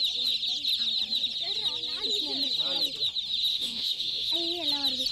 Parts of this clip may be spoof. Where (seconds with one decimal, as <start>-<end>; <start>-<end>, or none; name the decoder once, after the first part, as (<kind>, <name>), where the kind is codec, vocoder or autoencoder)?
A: 3.5-4.3 (autoencoder, DAC-VAE)